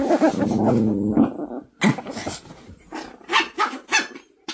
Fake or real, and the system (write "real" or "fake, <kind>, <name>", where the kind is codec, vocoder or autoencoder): real